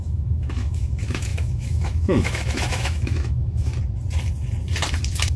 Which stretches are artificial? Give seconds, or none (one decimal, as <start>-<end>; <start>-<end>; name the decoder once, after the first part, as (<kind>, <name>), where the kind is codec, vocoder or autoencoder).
0.0-3.7 (autoencoder, DAC-VAE)